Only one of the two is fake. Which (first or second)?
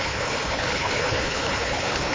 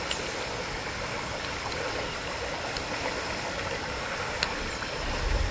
first